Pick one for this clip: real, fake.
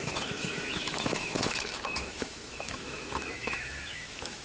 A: fake